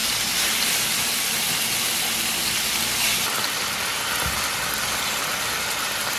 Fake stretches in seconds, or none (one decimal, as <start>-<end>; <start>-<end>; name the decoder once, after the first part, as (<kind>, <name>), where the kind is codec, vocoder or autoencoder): 0.0-3.7 (vocoder, BigVGAN v2)